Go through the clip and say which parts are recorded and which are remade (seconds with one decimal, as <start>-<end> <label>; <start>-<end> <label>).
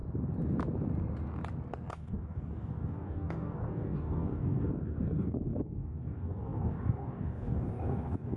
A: 0.0-1.9 recorded; 1.9-8.4 remade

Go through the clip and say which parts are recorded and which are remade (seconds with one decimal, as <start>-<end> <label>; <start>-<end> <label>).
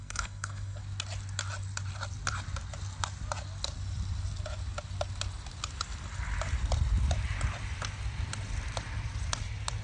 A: 0.0-0.8 remade; 0.8-9.8 recorded